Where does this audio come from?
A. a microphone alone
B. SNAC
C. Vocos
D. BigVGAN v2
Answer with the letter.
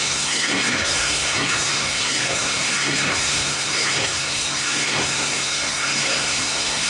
B